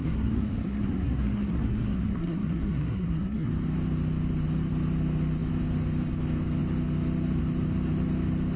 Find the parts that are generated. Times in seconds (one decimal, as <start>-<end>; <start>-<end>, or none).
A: 0.0-3.5